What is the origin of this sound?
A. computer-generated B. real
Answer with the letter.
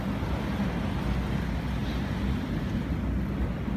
B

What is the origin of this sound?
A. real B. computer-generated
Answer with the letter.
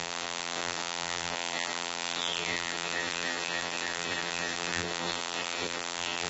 B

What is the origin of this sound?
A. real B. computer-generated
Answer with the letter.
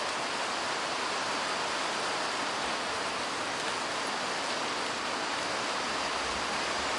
A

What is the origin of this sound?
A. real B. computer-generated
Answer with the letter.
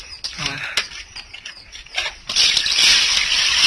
A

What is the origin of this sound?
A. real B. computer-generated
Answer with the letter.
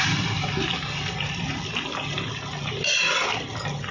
A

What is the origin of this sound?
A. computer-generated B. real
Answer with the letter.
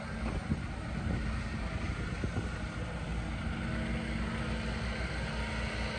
B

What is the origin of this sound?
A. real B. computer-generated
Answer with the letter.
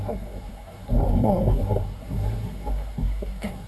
B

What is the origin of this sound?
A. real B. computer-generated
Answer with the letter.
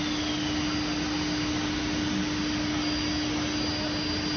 A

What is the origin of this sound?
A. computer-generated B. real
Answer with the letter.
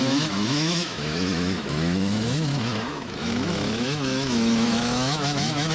A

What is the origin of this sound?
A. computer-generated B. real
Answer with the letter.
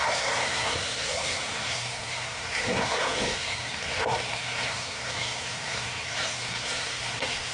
A